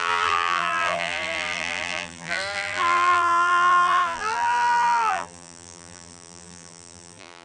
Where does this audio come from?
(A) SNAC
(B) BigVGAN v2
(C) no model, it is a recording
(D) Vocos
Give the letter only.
B